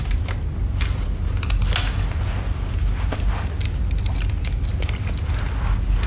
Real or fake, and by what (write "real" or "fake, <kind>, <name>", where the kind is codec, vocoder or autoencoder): real